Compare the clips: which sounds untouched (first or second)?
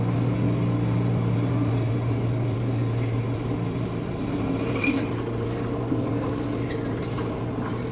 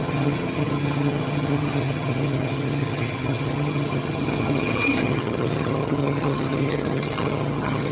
first